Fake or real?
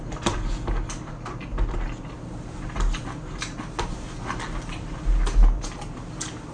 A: real